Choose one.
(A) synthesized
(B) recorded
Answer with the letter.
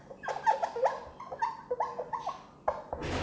B